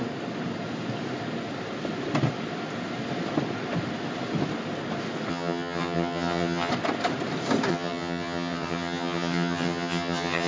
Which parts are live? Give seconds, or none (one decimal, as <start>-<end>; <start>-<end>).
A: 0.0-5.3; 6.7-7.7